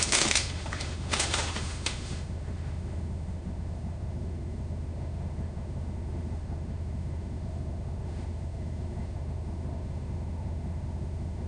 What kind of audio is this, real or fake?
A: fake